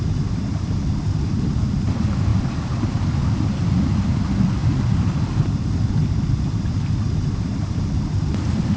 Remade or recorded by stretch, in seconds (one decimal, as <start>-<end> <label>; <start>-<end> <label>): 0.0-2.3 recorded; 2.3-3.0 remade; 3.0-8.8 recorded

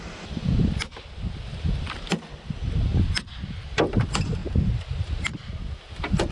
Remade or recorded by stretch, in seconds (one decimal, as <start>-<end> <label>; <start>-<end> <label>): 0.0-2.9 remade; 2.9-3.7 recorded; 3.7-6.3 remade

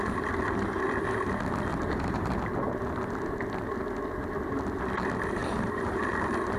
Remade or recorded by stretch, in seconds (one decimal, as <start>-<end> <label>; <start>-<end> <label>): 0.0-1.7 recorded; 1.7-2.4 remade; 2.4-5.4 recorded; 5.4-6.0 remade; 6.0-6.6 recorded